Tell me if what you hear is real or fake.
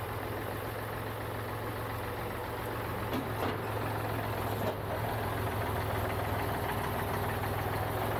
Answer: real